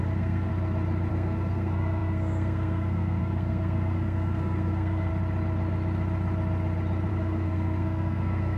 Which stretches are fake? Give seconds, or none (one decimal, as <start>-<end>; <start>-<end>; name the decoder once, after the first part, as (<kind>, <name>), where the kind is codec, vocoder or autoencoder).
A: 0.0-0.5 (codec, SNAC); 1.1-5.1; 7.1-8.6

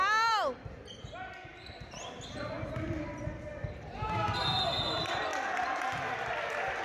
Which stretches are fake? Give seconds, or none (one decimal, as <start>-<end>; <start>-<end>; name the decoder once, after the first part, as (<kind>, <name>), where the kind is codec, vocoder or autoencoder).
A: none

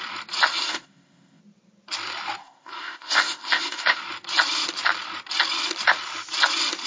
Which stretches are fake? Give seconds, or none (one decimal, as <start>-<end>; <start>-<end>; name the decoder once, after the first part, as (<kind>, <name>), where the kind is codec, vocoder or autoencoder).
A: 0.5-1.4 (codec, ZipCodec); 2.4-4.0

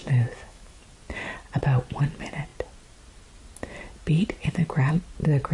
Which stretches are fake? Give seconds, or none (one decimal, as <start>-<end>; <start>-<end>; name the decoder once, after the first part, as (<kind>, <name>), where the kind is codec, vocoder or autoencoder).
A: 0.0-0.8 (autoencoder, DAC-VAE)

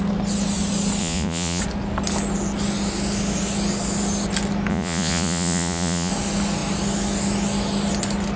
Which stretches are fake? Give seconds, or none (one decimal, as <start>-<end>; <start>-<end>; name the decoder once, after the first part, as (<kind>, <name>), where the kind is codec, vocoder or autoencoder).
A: 1.0-1.6 (vocoder, Vocos); 4.7-6.1